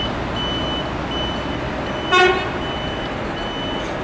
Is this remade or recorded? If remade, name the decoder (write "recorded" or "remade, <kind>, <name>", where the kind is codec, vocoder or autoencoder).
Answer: recorded